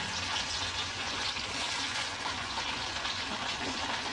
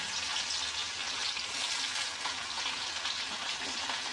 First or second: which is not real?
first